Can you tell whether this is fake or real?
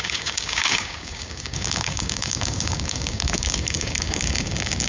fake